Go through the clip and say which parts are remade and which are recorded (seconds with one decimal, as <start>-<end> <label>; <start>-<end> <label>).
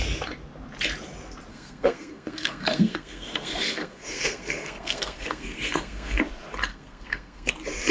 0.0-1.5 recorded; 1.5-6.2 remade; 6.2-6.7 recorded; 6.7-7.5 remade; 7.5-7.9 recorded